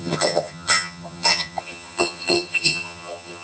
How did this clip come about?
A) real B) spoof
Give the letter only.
B